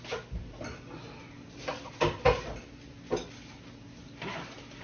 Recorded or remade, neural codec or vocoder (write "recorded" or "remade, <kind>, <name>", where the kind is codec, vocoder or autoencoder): recorded